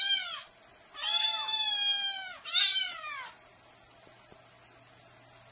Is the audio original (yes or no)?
yes